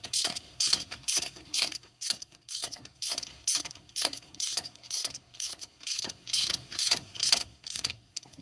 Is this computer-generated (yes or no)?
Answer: yes